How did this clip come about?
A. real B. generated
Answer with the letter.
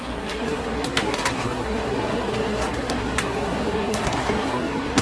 B